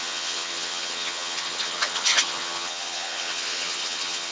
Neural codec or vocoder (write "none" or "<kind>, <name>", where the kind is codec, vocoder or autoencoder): vocoder, HiFi-GAN